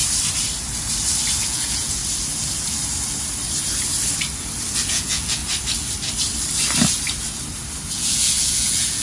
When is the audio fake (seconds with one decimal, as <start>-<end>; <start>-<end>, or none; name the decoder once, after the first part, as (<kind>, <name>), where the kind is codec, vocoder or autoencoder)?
1.4-2.0 (vocoder, Vocos); 4.7-5.4; 7.9-9.0